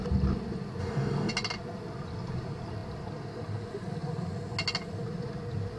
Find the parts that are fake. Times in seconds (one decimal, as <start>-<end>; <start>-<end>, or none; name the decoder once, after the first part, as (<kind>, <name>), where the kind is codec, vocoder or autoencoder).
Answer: 0.8-1.3 (codec, DAC)